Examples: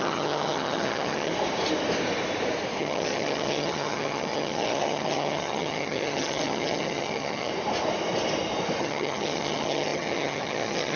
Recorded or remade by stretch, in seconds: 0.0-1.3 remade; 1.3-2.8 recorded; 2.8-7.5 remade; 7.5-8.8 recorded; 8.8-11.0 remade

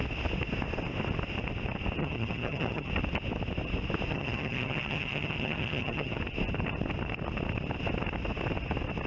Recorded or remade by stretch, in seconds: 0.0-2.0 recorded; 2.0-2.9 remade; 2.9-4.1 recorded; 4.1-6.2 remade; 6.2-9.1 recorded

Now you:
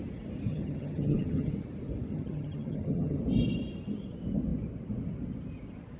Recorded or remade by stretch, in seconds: 0.0-0.5 recorded; 0.5-1.5 remade; 1.5-2.1 recorded; 2.1-3.2 remade; 3.2-6.0 recorded

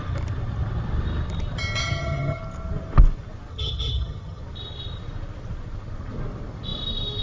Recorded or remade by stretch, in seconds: 0.0-1.8 recorded; 1.8-2.4 remade; 2.4-3.5 recorded; 3.5-4.4 remade; 4.4-7.2 recorded